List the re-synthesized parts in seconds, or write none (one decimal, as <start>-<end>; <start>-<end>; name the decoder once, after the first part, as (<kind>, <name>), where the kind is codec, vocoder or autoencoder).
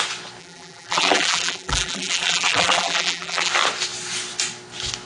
0.4-3.5 (vocoder, BigVGAN v2)